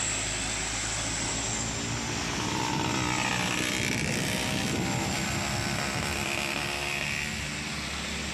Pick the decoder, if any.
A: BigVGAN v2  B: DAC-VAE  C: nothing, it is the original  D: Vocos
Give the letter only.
C